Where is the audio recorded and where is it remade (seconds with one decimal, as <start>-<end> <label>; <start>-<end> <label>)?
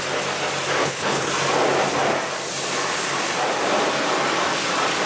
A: 0.0-0.8 recorded; 0.8-1.3 remade; 1.3-5.1 recorded